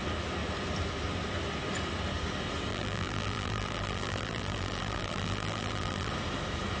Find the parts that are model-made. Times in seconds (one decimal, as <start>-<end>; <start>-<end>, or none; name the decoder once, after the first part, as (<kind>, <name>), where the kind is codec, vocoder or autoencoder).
2.7-6.1 (vocoder, BigVGAN v2)